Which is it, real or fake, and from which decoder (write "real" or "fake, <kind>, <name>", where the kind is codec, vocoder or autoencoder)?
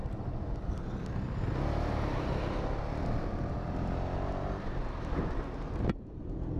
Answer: real